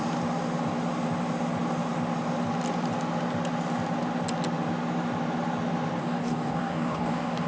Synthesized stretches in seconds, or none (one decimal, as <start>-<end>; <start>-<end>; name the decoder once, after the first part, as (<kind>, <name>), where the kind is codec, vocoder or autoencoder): 6.0-7.5 (codec, DAC)